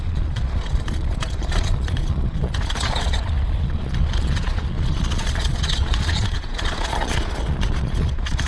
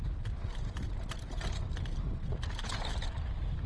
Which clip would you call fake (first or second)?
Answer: first